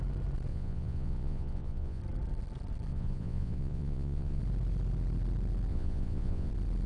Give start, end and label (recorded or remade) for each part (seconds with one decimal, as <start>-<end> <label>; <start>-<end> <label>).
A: 0.0-0.5 recorded; 0.5-2.0 remade; 2.0-2.9 recorded; 2.9-4.4 remade; 4.4-5.7 recorded; 5.7-6.5 remade; 6.5-6.9 recorded